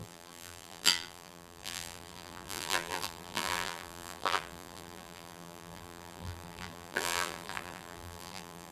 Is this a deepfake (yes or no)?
yes